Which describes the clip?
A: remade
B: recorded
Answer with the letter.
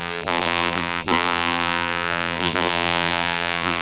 A